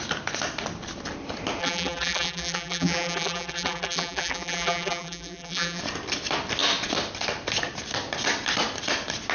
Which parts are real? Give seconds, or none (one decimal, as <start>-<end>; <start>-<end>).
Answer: 0.0-1.6; 5.8-9.3